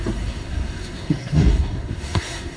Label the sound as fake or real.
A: fake